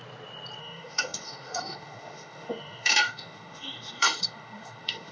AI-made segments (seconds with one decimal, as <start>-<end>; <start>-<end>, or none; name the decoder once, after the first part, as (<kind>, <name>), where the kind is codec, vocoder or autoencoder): 0.6-5.1 (autoencoder, DAC-VAE)